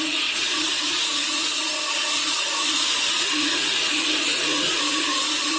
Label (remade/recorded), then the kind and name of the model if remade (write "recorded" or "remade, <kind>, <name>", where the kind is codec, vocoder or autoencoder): remade, vocoder, Vocos